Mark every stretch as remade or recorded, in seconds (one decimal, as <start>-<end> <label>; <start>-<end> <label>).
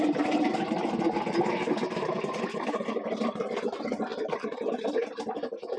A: 0.0-5.8 recorded